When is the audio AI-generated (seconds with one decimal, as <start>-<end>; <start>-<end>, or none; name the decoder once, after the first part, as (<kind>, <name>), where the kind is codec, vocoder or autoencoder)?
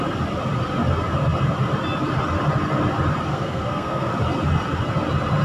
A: 3.3-4.1 (codec, SNAC)